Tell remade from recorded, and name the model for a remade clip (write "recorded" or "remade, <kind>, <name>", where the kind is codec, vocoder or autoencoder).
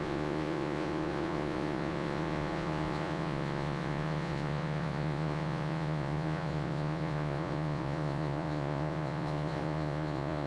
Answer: remade, vocoder, Vocos